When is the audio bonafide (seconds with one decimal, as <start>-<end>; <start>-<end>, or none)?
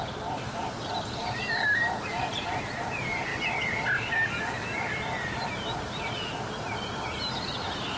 none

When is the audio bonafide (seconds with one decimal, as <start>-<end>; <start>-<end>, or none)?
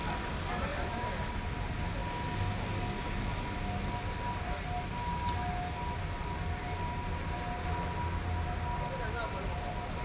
0.0-0.7; 1.3-10.0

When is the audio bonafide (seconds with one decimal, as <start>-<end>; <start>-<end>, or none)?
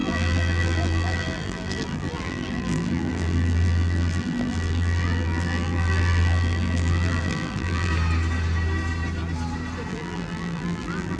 7.9-9.9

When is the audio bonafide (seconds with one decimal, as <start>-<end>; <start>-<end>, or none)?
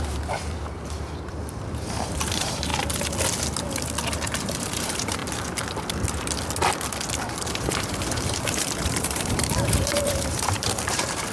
2.7-4.1; 5.2-7.3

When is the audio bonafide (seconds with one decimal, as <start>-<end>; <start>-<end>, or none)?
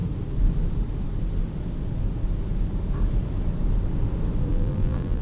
0.0-4.5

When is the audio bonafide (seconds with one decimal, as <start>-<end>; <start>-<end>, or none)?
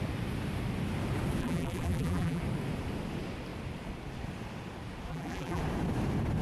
0.0-1.4; 2.4-5.1; 5.6-6.4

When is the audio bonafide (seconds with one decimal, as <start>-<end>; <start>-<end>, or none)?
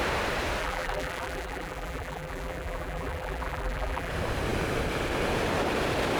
0.0-0.6; 4.1-6.2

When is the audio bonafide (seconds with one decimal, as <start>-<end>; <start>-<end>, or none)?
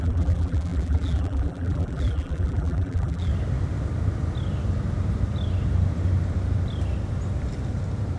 3.3-8.2